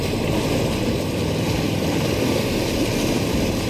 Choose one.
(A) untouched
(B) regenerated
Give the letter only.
A